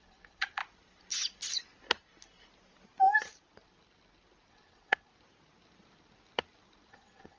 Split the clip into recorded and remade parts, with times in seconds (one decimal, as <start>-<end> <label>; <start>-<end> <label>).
0.0-0.6 remade; 0.6-4.5 recorded; 4.5-5.1 remade; 5.1-6.9 recorded; 6.9-7.4 remade